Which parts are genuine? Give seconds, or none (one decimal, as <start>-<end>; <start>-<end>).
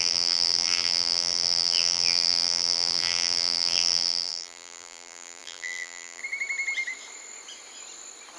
6.2-8.4